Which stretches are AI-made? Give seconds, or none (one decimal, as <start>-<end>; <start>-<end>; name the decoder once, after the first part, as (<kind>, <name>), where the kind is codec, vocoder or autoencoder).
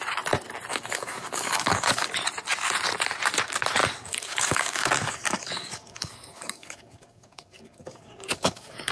0.7-2.1 (codec, DAC); 3.8-8.9